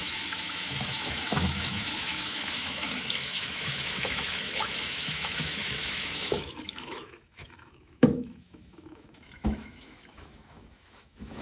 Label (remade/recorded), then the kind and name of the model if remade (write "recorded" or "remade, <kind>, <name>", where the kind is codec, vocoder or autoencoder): remade, autoencoder, DAC-VAE